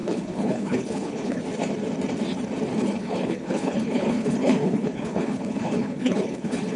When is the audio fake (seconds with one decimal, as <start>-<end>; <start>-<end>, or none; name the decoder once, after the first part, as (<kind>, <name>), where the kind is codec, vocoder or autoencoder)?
0.0-1.4 (codec, HILCodec); 2.7-6.8

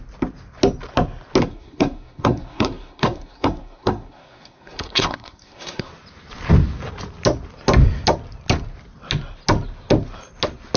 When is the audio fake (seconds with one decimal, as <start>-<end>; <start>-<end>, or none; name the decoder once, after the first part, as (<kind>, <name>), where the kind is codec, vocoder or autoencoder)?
1.4-5.9 (codec, SNAC)

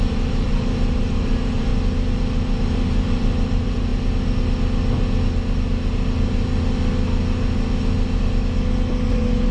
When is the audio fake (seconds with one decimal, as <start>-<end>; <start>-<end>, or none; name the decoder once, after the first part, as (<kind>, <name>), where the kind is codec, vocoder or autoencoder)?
0.0-1.7 (vocoder, BigVGAN v2); 2.6-3.9; 9.1-9.5

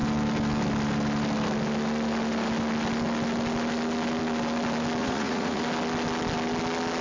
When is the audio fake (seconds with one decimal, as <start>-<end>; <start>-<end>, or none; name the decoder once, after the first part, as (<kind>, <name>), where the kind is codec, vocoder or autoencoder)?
5.0-5.6 (vocoder, Vocos)

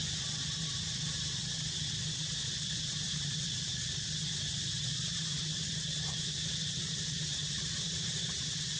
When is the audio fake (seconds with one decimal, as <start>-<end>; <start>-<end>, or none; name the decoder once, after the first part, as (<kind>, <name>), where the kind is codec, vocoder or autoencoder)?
0.6-1.4 (vocoder, BigVGAN v2); 2.1-3.7; 4.5-8.8

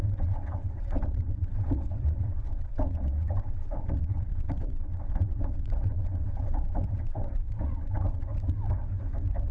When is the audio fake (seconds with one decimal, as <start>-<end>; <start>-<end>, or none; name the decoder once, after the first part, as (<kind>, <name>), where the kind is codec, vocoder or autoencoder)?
0.0-8.3 (vocoder, WaveNeXt)

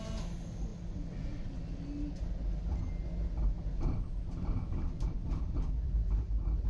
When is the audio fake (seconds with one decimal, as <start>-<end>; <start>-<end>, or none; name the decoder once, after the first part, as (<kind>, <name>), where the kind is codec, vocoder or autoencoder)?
none